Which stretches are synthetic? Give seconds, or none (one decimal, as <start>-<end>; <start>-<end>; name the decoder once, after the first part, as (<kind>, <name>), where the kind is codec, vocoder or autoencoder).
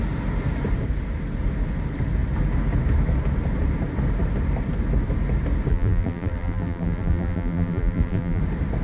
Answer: 5.7-8.4 (vocoder, BigVGAN v2)